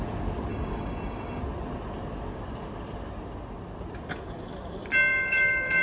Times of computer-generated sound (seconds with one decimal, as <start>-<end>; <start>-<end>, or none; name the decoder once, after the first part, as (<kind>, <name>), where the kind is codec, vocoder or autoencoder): 0.5-1.4 (codec, DAC); 5.1-5.8